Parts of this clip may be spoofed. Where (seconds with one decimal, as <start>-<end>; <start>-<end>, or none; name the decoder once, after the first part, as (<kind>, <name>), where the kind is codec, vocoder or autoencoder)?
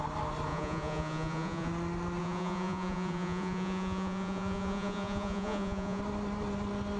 0.5-1.7 (vocoder, Vocos); 2.2-6.0